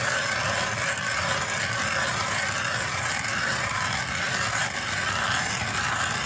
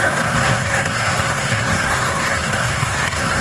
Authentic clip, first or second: first